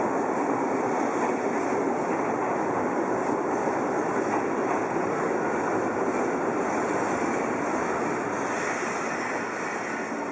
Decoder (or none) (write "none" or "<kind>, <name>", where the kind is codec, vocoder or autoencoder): vocoder, BigVGAN v2